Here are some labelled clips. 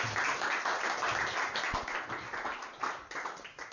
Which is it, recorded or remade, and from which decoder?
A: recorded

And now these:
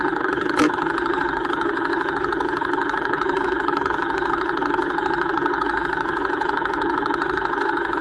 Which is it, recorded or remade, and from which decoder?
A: remade, codec, HILCodec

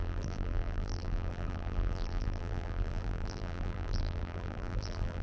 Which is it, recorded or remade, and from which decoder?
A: remade, vocoder, BigVGAN v2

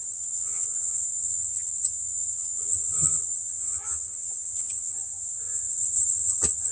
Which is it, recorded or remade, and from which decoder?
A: remade, vocoder, HiFi-GAN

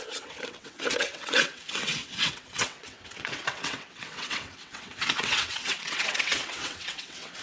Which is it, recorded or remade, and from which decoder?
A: remade, vocoder, WaveNeXt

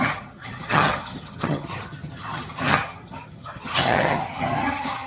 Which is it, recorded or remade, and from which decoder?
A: remade, vocoder, HiFi-GAN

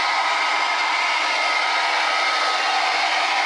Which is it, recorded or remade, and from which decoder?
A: recorded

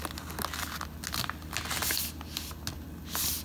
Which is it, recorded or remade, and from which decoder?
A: recorded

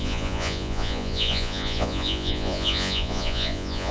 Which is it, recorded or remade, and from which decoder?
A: remade, vocoder, Vocos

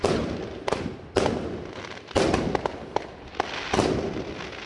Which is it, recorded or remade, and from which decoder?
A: recorded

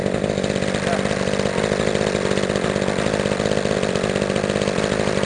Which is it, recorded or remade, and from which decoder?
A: recorded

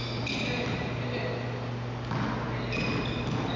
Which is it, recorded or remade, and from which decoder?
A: recorded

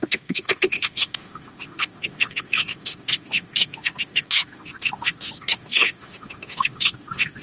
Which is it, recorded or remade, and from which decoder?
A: remade, autoencoder, DAC-VAE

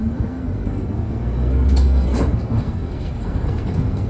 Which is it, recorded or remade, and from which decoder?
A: remade, codec, SNAC